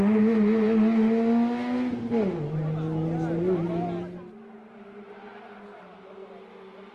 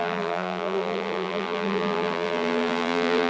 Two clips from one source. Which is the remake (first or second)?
second